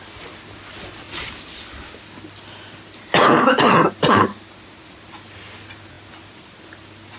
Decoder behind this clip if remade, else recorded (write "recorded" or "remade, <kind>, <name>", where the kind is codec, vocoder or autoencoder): recorded